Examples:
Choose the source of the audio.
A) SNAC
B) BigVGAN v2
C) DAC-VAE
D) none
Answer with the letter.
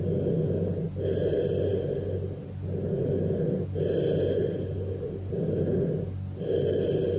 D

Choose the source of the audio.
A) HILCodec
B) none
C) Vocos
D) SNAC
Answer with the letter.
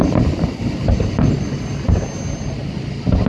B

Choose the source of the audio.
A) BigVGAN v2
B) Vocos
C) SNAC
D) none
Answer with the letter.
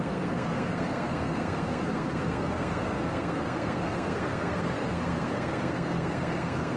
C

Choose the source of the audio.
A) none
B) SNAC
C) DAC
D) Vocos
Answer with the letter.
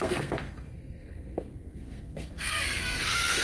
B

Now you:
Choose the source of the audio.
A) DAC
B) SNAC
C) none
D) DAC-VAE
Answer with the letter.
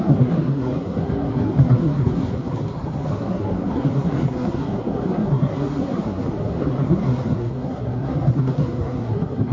B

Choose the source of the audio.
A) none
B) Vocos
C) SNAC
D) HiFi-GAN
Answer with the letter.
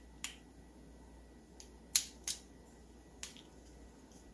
A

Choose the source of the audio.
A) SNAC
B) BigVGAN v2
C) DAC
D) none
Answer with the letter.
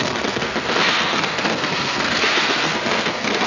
A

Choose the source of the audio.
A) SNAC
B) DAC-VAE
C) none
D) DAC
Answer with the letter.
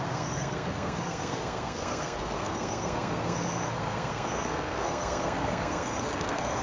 A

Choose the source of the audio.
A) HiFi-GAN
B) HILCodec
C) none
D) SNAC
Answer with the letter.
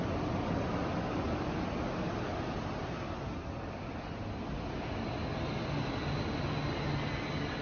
C